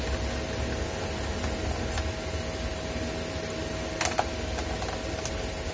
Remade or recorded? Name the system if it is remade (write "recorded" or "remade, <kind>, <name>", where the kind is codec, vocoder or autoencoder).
recorded